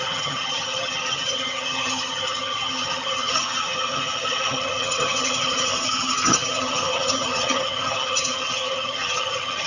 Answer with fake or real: fake